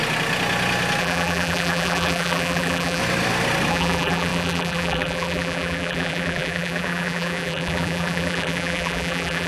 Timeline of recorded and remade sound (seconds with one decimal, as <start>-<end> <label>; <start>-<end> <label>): 0.0-1.0 recorded; 1.0-3.0 remade; 3.0-3.7 recorded; 3.7-9.5 remade

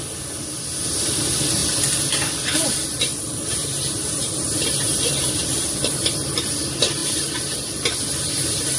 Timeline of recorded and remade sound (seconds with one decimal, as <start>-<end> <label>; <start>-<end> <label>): 0.0-8.8 recorded

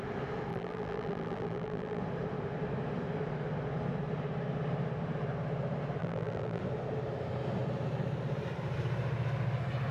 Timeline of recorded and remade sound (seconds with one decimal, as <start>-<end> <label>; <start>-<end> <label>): 0.0-0.5 recorded; 0.5-2.0 remade; 2.0-6.0 recorded; 6.0-6.6 remade; 6.6-9.9 recorded

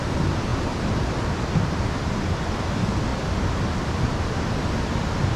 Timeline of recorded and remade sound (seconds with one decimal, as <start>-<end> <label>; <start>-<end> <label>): 0.0-0.5 recorded; 0.5-2.4 remade; 2.4-3.1 recorded; 3.1-4.7 remade; 4.7-5.4 recorded

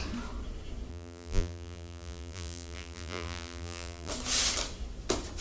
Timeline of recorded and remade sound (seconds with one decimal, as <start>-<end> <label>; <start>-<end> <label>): 0.0-0.9 recorded; 0.9-4.1 remade; 4.1-5.4 recorded

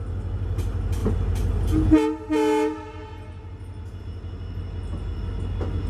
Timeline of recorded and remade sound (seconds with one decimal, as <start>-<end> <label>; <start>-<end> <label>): 0.0-5.9 recorded

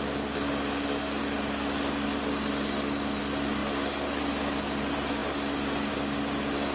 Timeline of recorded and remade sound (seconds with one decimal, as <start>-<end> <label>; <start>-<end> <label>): 0.0-6.7 recorded